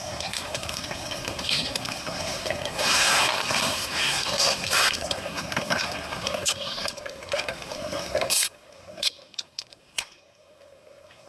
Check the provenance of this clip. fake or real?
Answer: fake